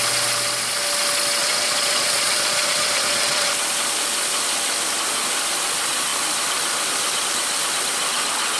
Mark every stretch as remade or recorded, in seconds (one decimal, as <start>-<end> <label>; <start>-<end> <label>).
0.0-1.4 recorded; 1.4-3.5 remade; 3.5-8.6 recorded